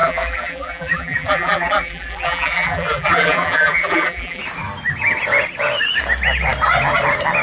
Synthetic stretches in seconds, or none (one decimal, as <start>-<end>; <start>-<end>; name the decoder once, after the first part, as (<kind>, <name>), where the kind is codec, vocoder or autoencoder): 0.0-4.4 (vocoder, BigVGAN v2)